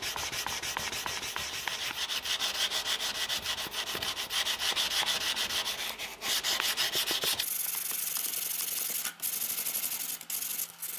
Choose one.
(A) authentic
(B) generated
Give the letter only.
A